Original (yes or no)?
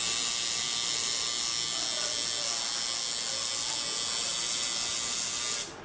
yes